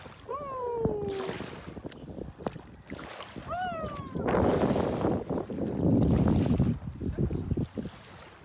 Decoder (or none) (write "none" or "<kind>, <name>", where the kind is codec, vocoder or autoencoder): none